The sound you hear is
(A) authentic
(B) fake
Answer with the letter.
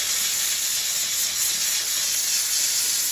A